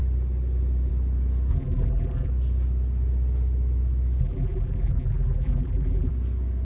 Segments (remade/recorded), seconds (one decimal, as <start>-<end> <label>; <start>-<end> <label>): 0.0-1.5 recorded; 1.5-2.3 remade; 2.3-4.2 recorded; 4.2-6.1 remade; 6.1-6.6 recorded

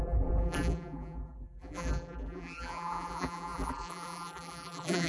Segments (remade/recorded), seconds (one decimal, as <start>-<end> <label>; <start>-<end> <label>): 0.0-5.1 remade

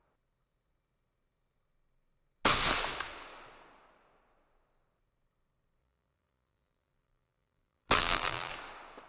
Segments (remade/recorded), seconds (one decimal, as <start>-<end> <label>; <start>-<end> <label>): 0.0-5.8 recorded; 5.8-8.5 remade; 8.5-9.1 recorded

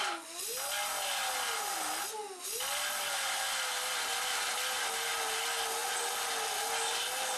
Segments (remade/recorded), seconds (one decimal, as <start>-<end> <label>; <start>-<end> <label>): 0.0-7.4 recorded

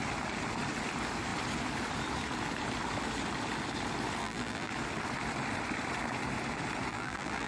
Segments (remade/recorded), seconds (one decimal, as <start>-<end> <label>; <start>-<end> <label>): 0.0-4.2 recorded; 4.2-4.7 remade; 4.7-6.9 recorded; 6.9-7.5 remade

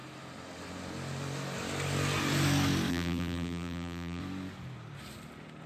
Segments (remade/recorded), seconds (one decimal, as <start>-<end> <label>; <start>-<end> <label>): 0.0-2.9 recorded; 2.9-4.2 remade; 4.2-5.7 recorded

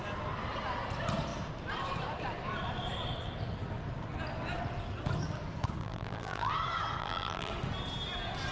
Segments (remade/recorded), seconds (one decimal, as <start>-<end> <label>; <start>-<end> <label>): 0.0-5.8 recorded; 5.8-6.5 remade; 6.5-7.0 recorded; 7.0-7.5 remade; 7.5-8.5 recorded